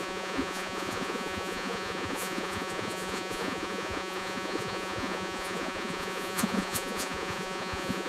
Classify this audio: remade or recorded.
remade